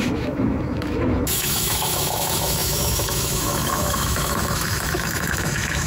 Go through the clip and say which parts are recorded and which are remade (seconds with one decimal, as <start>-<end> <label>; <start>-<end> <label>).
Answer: 0.0-5.9 remade